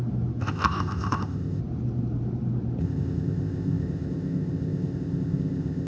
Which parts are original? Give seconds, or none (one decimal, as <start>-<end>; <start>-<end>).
0.0-0.4; 1.6-2.8